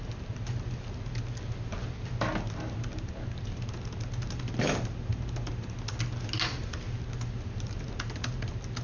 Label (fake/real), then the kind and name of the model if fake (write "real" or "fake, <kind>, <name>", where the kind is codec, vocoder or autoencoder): real